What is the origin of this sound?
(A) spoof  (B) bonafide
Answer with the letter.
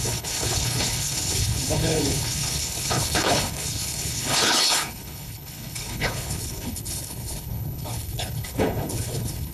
A